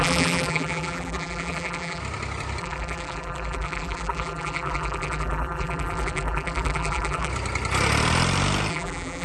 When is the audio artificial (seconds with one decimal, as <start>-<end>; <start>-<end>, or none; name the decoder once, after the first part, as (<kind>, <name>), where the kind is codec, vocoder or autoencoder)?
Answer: 0.0-2.0 (vocoder, BigVGAN v2); 2.6-7.3; 8.7-9.2